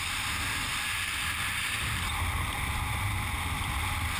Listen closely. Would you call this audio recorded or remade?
recorded